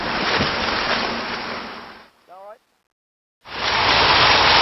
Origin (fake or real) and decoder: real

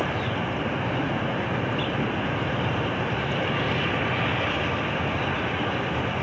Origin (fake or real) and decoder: real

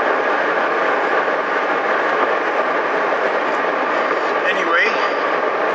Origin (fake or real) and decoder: real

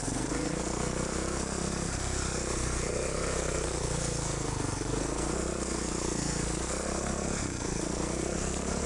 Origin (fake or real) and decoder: fake, codec, SNAC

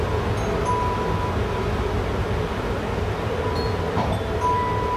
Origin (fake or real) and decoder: real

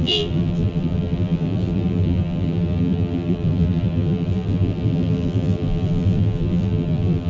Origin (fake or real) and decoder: fake, vocoder, BigVGAN v2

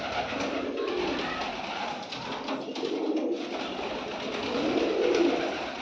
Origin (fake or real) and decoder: real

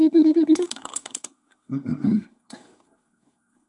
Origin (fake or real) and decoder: fake, codec, SNAC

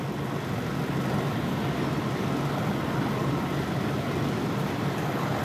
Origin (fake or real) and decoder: real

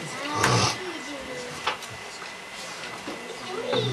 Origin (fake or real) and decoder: real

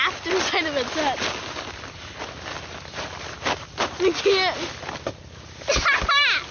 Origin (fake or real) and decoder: real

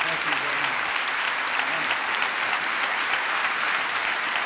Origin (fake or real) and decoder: fake, vocoder, BigVGAN v2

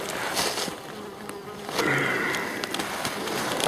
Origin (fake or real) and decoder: real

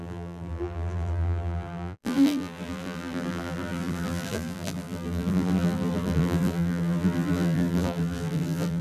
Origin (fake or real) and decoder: fake, vocoder, BigVGAN v2